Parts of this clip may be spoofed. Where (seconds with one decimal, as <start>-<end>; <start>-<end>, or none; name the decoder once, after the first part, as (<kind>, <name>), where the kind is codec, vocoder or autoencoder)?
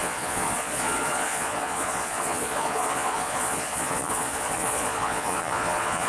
0.0-6.1 (vocoder, Vocos)